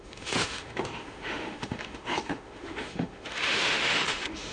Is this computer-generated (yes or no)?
yes